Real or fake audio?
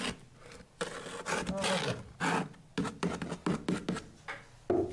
real